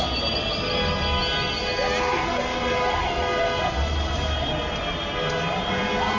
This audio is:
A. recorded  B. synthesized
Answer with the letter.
A